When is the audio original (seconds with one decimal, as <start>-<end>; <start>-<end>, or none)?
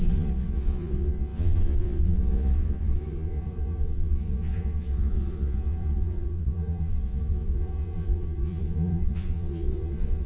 none